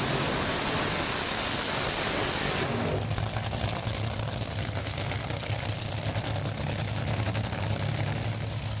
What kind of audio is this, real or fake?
real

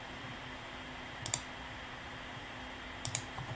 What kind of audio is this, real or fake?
fake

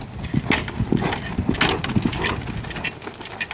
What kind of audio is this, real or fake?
real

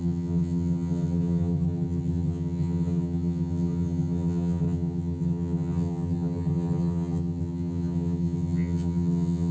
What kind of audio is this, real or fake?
fake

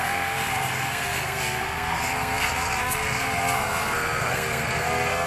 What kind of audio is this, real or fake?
fake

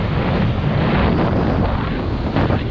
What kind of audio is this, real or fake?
real